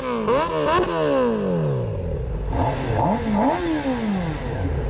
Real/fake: real